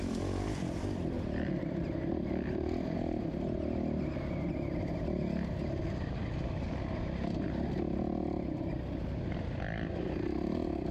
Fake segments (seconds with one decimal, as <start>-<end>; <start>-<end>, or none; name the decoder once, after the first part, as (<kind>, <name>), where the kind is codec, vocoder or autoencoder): 0.0-1.9 (vocoder, BigVGAN v2)

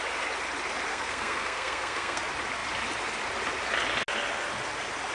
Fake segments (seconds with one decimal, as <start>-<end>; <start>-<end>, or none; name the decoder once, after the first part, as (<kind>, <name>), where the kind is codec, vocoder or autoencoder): 0.9-2.2 (codec, SNAC)

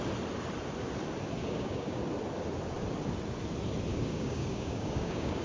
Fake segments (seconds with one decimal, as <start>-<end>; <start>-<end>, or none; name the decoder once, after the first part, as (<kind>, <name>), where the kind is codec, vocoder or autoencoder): 1.4-2.0 (codec, DAC); 3.9-5.4

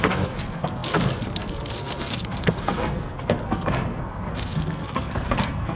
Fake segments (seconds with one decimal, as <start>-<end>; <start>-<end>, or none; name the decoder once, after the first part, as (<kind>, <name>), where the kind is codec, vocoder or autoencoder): 0.0-5.8 (codec, SNAC)

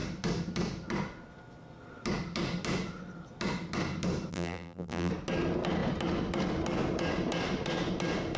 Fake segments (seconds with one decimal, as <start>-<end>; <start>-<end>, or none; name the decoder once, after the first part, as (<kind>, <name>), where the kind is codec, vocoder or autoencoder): 4.3-5.1 (vocoder, BigVGAN v2)

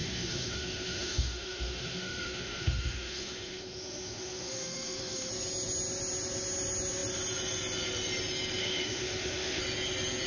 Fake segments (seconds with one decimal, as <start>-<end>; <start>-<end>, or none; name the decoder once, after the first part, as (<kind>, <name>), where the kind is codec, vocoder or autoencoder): 0.0-5.3 (autoencoder, DAC-VAE); 8.6-9.6

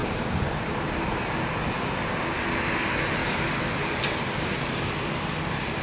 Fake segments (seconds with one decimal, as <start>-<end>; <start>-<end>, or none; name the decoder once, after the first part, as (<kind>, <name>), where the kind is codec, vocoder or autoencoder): 0.0-1.3 (vocoder, BigVGAN v2); 3.2-4.6

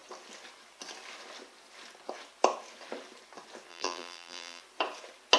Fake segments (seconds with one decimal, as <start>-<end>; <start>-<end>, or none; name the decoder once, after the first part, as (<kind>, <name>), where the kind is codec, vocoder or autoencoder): 3.7-4.6 (vocoder, BigVGAN v2)